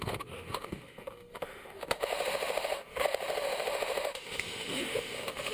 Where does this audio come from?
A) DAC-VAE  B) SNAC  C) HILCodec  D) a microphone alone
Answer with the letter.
A